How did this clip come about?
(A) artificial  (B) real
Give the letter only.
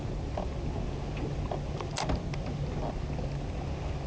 B